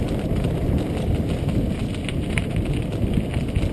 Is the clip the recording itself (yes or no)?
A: yes